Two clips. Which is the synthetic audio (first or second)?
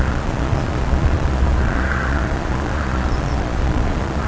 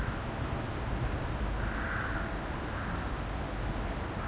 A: first